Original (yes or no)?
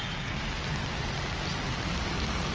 yes